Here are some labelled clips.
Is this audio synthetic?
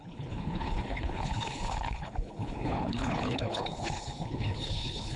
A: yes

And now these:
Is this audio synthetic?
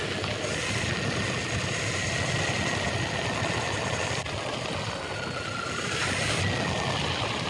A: no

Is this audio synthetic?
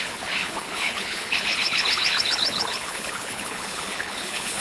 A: yes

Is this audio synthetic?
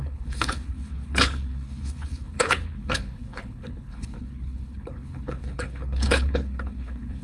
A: yes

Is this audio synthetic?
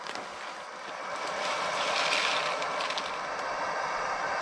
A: no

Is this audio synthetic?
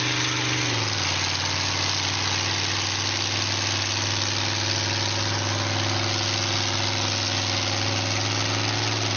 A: no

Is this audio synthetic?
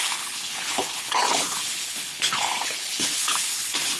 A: yes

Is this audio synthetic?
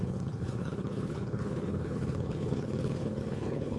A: yes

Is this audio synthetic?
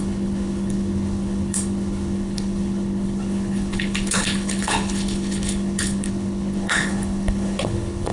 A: yes